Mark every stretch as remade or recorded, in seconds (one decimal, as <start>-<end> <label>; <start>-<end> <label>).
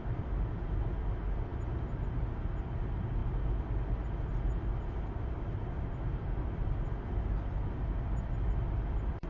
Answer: 0.0-9.3 recorded